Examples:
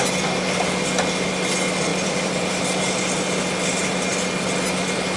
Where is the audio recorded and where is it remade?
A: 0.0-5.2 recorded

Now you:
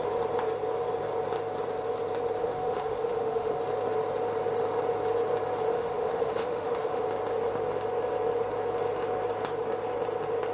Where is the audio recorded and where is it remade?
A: 0.0-2.4 recorded; 2.4-3.6 remade; 3.6-5.7 recorded; 5.7-7.0 remade; 7.0-10.5 recorded

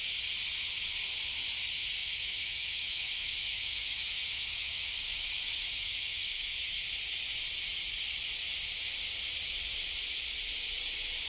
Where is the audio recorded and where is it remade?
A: 0.0-2.0 recorded; 2.0-6.7 remade; 6.7-11.3 recorded

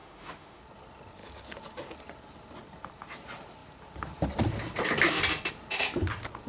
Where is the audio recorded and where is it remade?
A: 0.0-0.6 remade; 0.6-6.5 recorded